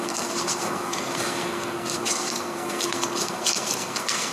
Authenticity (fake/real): fake